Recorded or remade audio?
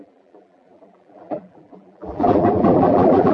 remade